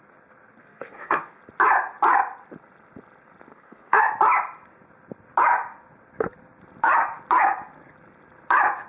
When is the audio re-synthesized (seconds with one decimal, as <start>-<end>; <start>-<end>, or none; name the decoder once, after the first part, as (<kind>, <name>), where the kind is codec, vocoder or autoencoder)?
0.6-1.4 (codec, SNAC); 3.5-4.0